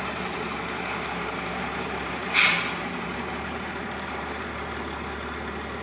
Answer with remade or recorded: remade